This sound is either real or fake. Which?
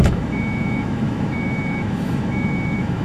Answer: fake